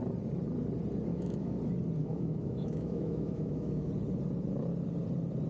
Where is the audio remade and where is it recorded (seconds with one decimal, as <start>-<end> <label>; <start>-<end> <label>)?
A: 0.0-1.1 recorded; 1.1-1.6 remade; 1.6-2.0 recorded; 2.0-3.9 remade; 3.9-5.5 recorded